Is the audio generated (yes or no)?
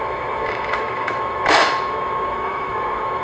yes